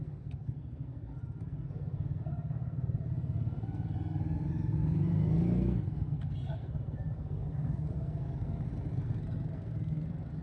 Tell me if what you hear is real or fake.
fake